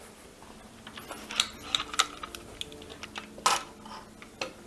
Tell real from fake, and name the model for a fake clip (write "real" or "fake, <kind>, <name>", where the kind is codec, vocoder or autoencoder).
real